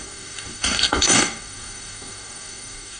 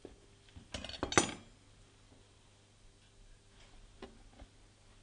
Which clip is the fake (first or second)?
first